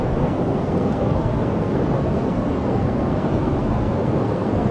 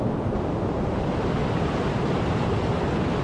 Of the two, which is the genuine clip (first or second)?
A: second